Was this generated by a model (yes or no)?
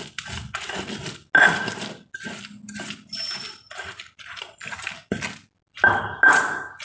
no